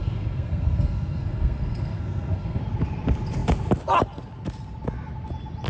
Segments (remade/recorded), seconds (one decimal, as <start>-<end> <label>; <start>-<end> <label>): 0.0-2.6 remade; 2.6-5.7 recorded